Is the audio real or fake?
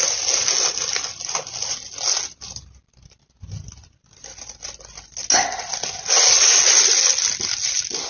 real